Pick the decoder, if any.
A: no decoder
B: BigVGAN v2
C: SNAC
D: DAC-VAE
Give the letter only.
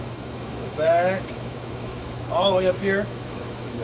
D